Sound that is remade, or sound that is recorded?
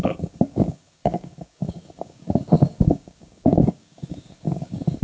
remade